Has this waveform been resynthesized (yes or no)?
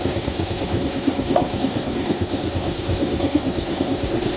yes